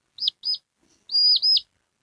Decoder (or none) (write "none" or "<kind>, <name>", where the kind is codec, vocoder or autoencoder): none